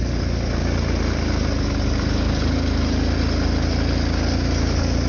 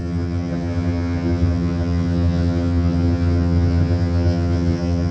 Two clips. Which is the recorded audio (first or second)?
first